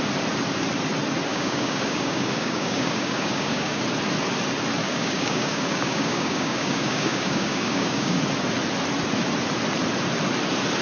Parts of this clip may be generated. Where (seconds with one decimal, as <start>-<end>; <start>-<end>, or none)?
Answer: 1.3-3.8; 4.8-8.2